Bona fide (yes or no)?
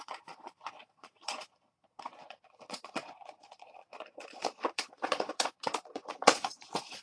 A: no